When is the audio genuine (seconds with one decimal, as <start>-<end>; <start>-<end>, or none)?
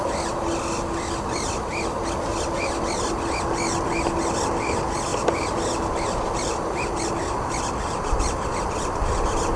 0.0-9.6